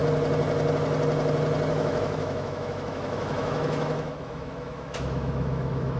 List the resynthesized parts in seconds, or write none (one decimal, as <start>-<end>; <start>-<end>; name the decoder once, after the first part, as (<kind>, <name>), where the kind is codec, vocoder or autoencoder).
1.7-6.0 (autoencoder, DAC-VAE)